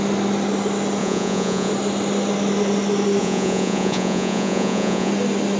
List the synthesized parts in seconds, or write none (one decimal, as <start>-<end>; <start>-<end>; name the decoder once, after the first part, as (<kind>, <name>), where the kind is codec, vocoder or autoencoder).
1.0-1.7 (vocoder, Vocos); 3.2-5.1